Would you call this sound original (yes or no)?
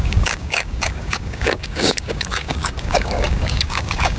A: no